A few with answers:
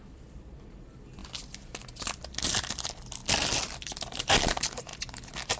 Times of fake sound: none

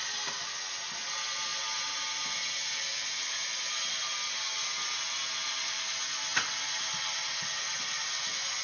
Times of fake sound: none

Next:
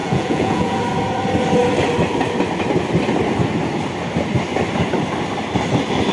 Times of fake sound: 0.0-0.7

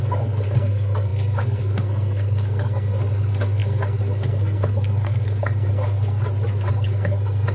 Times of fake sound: 0.0-6.2; 6.7-7.5

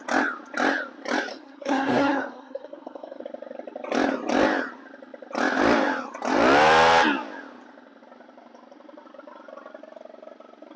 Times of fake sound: 1.3-3.2

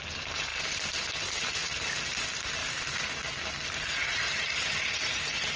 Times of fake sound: 0.5-1.0; 2.6-3.1; 4.0-5.1

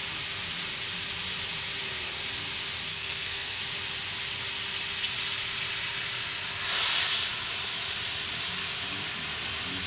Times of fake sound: 2.9-3.6